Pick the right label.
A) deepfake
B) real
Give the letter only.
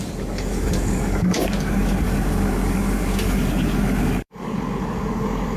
A